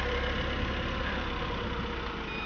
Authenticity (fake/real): real